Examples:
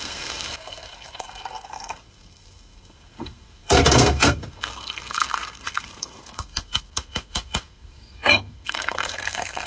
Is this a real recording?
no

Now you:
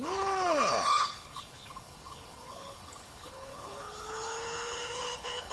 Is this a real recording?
no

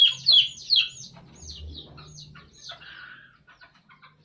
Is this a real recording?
yes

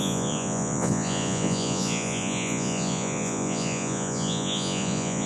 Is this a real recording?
no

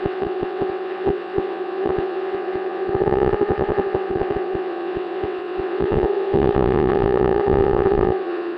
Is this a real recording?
no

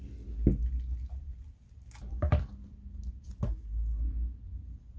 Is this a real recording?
yes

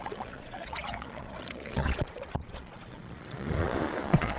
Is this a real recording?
no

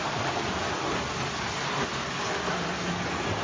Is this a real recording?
yes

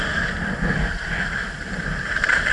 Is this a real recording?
yes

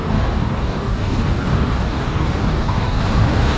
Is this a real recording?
no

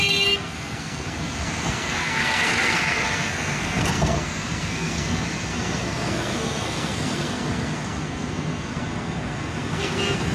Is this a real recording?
no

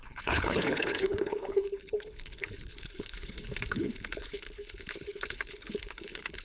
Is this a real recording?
no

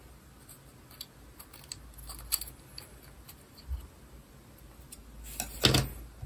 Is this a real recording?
yes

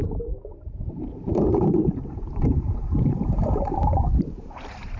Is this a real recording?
no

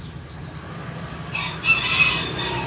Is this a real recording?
yes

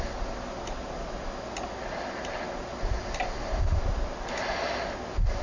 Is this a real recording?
yes